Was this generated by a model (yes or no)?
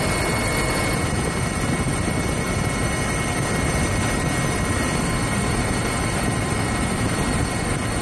no